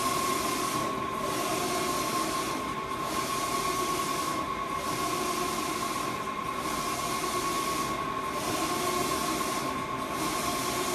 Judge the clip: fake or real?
real